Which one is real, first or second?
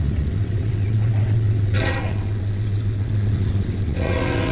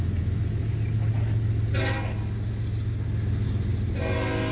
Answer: second